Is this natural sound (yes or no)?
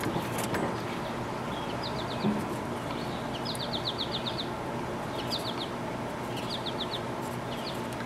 yes